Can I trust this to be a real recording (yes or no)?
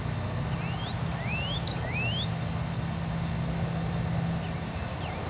yes